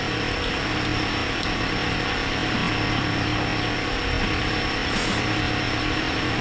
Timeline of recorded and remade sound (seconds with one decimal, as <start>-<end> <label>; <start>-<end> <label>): 0.0-6.4 recorded